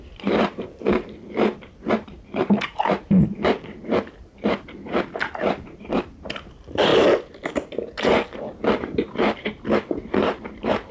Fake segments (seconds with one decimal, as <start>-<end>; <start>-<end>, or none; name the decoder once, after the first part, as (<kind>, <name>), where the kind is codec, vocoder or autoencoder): 0.0-6.9 (vocoder, BigVGAN v2); 8.8-10.9